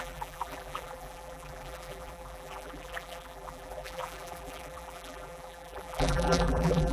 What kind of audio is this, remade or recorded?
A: remade